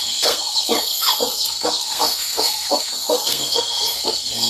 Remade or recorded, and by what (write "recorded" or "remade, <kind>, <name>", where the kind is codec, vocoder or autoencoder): remade, codec, SNAC